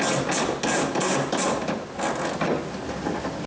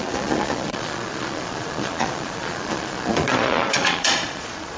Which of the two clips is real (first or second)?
first